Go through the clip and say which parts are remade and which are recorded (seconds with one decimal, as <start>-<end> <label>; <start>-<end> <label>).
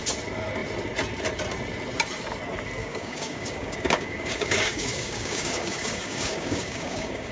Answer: 0.0-2.8 recorded; 2.8-7.3 remade